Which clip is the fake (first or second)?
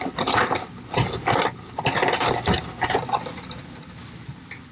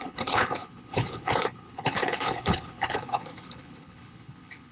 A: second